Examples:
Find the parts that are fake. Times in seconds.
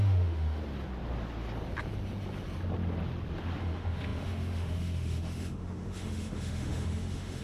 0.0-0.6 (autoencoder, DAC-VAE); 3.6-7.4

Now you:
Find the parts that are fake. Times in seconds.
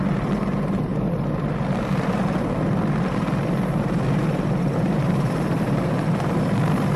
none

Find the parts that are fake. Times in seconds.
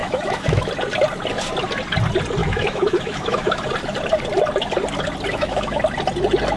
0.0-0.7 (autoencoder, DAC-VAE); 2.4-3.6; 5.3-5.8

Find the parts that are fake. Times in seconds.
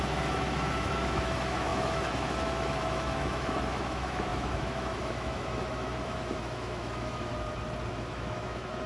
0.0-7.3 (autoencoder, DAC-VAE); 7.9-8.9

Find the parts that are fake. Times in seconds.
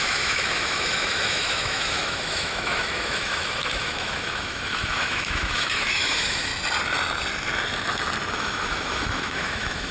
0.0-6.5 (autoencoder, DAC-VAE); 8.3-9.9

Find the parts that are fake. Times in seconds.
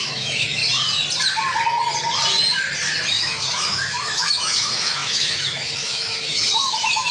0.0-0.6 (autoencoder, DAC-VAE); 3.1-7.1